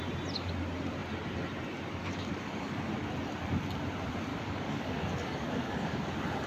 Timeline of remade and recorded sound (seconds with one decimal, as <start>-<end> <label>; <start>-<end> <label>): 0.0-2.0 recorded; 2.0-2.9 remade; 2.9-4.3 recorded; 4.3-6.1 remade; 6.1-6.5 recorded